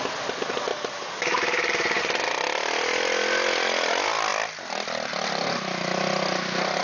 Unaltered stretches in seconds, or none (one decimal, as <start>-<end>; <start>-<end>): 0.0-0.7; 2.0-6.8